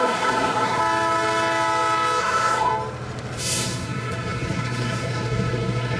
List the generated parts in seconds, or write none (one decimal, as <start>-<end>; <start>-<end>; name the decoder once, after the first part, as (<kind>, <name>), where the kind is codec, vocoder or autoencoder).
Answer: 0.0-0.8 (codec, SNAC); 2.2-2.7; 3.4-6.0